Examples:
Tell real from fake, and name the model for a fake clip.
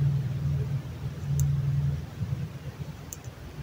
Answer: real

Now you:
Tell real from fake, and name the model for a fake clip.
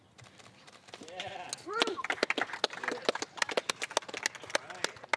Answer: real